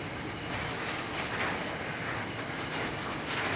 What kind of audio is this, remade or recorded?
recorded